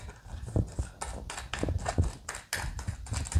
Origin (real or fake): real